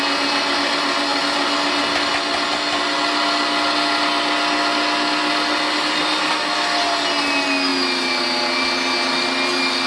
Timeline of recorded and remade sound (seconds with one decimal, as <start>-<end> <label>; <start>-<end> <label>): 0.0-9.9 recorded